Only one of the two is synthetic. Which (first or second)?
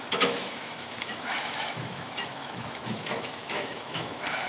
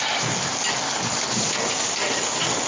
first